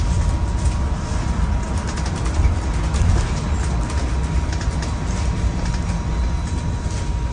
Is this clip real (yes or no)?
yes